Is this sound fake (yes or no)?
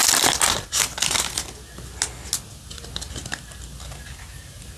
no